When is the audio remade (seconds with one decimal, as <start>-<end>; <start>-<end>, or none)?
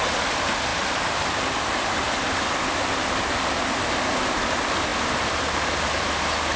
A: 0.7-3.9